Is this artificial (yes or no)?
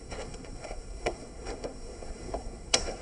yes